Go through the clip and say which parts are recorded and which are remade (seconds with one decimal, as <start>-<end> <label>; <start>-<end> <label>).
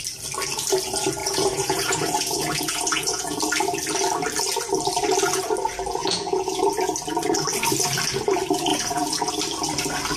0.0-1.2 recorded; 1.2-3.4 remade; 3.4-6.0 recorded; 6.0-6.6 remade; 6.6-8.7 recorded; 8.7-9.3 remade; 9.3-10.2 recorded